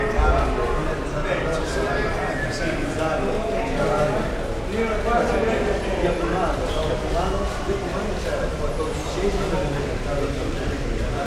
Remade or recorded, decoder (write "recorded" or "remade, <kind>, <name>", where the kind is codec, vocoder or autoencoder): recorded